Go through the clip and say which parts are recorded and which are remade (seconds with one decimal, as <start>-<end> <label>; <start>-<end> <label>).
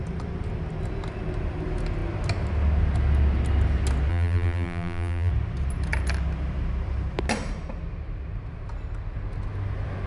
0.0-4.1 recorded; 4.1-5.3 remade; 5.3-10.1 recorded